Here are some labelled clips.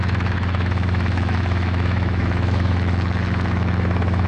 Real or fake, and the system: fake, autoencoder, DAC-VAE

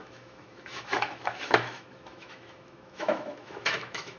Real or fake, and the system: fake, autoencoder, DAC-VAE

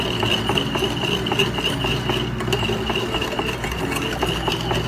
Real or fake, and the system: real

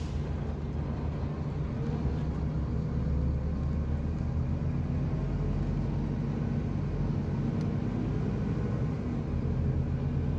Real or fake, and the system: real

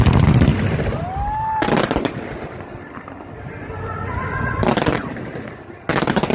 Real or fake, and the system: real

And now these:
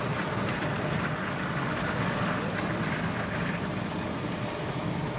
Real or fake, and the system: real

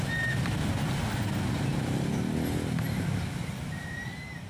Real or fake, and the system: real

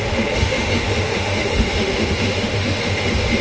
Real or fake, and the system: fake, autoencoder, DAC-VAE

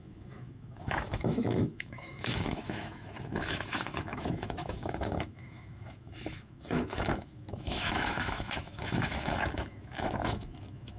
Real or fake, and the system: fake, autoencoder, DAC-VAE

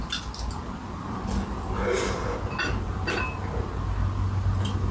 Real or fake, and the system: real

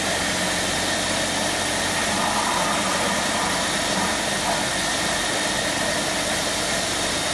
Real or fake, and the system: real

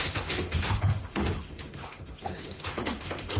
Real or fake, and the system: fake, autoencoder, DAC-VAE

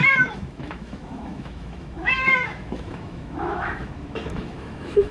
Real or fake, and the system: fake, autoencoder, DAC-VAE